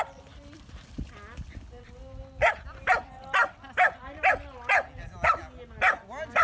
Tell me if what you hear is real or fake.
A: real